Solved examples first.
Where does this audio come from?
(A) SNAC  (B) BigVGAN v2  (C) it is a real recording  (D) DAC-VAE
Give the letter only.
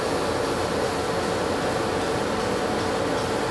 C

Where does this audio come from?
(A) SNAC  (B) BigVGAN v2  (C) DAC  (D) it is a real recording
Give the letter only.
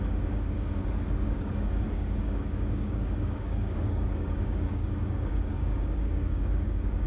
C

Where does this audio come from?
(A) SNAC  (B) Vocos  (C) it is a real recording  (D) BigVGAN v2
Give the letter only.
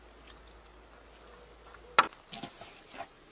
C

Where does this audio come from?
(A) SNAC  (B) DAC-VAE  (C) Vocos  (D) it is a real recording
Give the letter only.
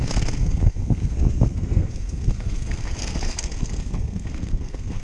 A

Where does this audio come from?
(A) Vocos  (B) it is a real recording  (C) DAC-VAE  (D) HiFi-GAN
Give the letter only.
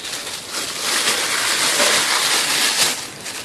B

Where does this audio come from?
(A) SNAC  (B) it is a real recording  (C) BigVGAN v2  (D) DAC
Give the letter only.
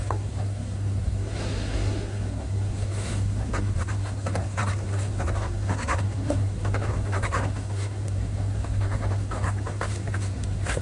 A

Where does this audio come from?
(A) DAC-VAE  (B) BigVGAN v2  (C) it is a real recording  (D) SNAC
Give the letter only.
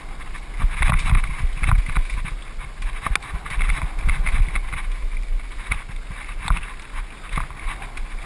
C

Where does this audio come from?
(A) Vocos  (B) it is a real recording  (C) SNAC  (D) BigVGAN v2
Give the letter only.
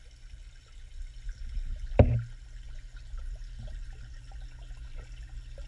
B